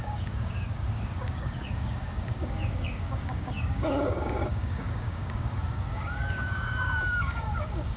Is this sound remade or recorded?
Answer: remade